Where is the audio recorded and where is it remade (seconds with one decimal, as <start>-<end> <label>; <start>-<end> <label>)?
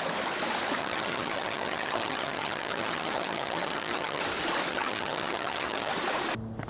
0.0-0.8 recorded; 0.8-4.2 remade; 4.2-4.7 recorded; 4.7-5.9 remade; 5.9-6.7 recorded